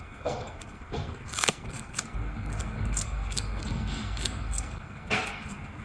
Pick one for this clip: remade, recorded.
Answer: remade